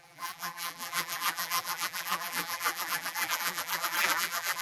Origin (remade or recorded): remade